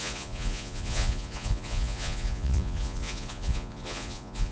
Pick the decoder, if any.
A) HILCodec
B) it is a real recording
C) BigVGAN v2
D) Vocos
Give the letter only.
D